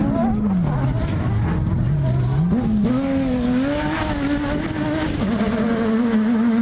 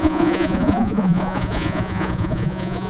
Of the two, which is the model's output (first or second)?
second